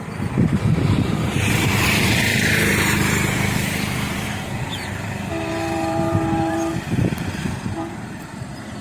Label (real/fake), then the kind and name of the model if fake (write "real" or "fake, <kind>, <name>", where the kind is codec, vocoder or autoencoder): fake, vocoder, BigVGAN v2